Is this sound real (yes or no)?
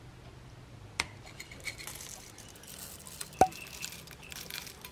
yes